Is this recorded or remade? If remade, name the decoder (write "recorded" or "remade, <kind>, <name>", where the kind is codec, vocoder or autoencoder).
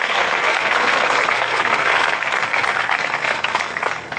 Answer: remade, codec, SNAC